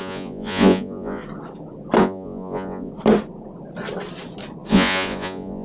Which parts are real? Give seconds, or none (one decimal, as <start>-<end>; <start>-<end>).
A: 1.2-2.0; 2.9-4.7

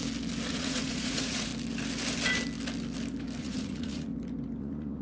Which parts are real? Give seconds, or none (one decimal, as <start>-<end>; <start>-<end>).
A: 0.0-0.5; 1.5-3.4; 4.1-4.6

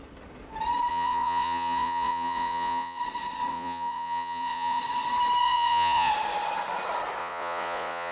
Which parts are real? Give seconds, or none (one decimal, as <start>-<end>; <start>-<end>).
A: 0.0-0.9; 3.0-3.5; 4.8-5.4; 6.1-7.2

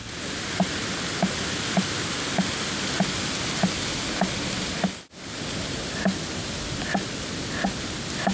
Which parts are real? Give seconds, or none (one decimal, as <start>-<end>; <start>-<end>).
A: 0.0-8.3

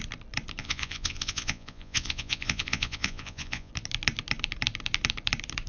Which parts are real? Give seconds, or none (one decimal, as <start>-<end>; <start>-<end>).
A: 0.0-0.6; 3.7-5.7